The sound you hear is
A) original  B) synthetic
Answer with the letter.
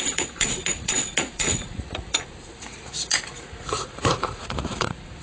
B